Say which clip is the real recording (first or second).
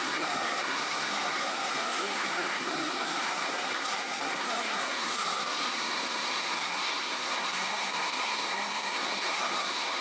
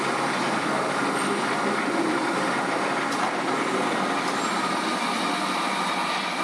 second